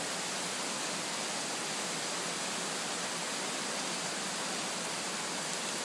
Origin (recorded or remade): recorded